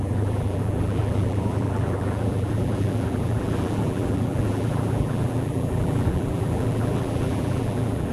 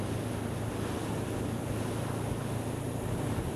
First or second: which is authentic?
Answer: second